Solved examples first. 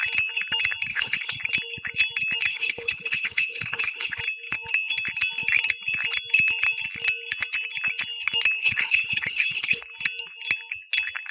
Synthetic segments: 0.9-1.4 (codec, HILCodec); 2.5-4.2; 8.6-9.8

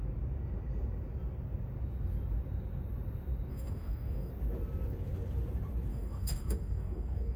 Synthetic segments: 3.5-4.3 (codec, DAC); 5.9-7.4

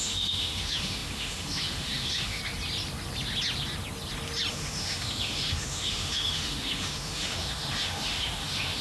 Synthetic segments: 0.0-2.4 (autoencoder, DAC-VAE); 4.5-8.8

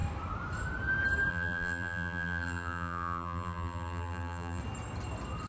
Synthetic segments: 1.3-4.6 (vocoder, BigVGAN v2)

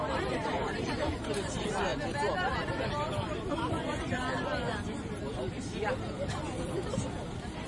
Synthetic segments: 0.0-7.7 (vocoder, BigVGAN v2)